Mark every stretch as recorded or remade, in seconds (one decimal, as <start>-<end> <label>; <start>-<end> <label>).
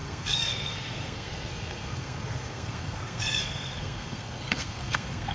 0.0-5.3 remade